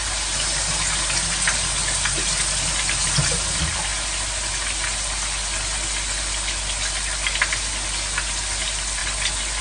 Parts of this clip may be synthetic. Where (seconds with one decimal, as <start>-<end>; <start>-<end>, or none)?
none